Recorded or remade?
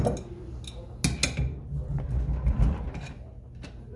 recorded